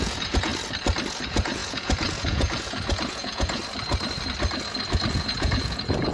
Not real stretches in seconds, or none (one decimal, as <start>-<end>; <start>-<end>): 0.0-0.5; 1.2-3.6; 5.1-6.1